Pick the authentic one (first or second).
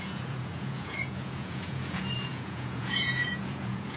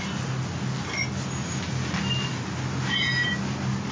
second